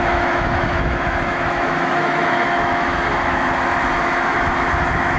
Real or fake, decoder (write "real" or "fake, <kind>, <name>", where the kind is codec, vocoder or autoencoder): fake, autoencoder, DAC-VAE